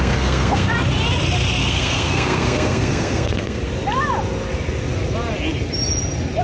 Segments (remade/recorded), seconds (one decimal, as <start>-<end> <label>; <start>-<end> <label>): 0.0-0.7 remade; 0.7-1.6 recorded; 1.6-3.7 remade; 3.7-6.4 recorded